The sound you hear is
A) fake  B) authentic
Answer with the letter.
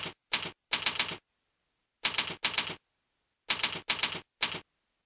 B